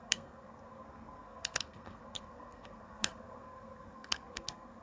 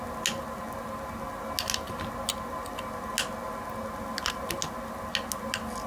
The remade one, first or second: first